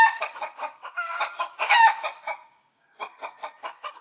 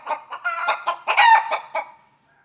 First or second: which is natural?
second